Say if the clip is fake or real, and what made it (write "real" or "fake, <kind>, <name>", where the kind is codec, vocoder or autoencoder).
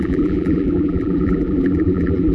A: fake, vocoder, BigVGAN v2